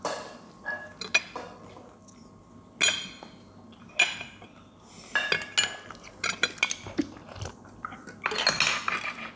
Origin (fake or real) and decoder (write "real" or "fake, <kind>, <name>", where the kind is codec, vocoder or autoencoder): real